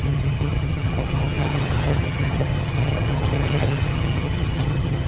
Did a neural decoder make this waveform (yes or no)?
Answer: yes